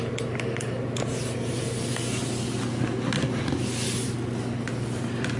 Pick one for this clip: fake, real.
real